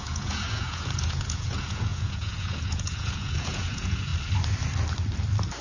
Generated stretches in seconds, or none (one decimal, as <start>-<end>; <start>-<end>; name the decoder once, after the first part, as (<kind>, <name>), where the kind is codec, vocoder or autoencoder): 0.0-4.1 (vocoder, Vocos)